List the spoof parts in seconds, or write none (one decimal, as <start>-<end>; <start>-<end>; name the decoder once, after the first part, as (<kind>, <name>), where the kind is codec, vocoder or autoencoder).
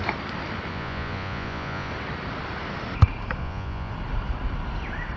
0.7-1.9 (vocoder, Vocos); 3.4-3.9